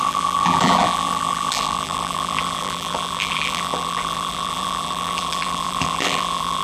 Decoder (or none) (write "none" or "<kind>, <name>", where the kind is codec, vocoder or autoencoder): vocoder, BigVGAN v2